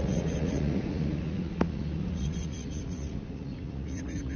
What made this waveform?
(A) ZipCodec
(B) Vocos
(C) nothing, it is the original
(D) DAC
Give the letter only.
B